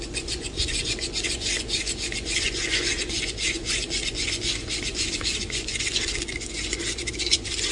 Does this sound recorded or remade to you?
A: remade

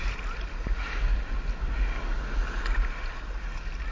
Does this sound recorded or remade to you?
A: recorded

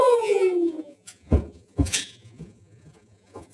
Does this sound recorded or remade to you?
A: remade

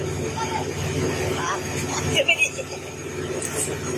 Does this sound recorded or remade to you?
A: recorded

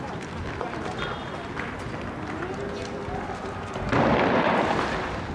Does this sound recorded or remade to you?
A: recorded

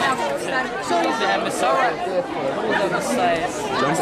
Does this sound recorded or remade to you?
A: recorded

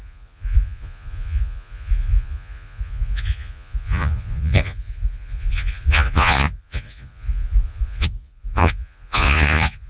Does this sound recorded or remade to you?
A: remade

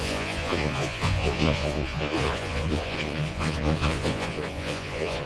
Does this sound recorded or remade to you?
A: remade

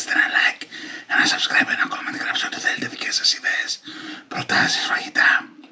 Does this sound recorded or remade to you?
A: recorded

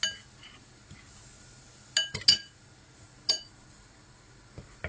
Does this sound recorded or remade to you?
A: recorded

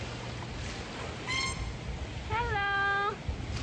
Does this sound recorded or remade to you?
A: recorded